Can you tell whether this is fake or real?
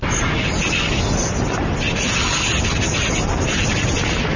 real